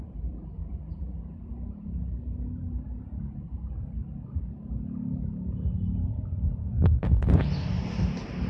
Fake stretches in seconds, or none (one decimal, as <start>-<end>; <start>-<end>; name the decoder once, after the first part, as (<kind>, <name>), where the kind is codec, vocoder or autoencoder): 6.6-7.2 (codec, SNAC)